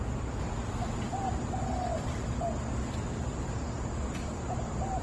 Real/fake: real